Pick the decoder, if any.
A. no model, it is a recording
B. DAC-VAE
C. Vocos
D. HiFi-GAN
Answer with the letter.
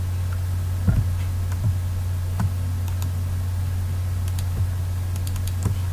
A